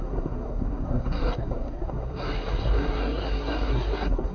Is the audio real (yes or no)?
no